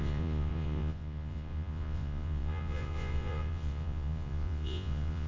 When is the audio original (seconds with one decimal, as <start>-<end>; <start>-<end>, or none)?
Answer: none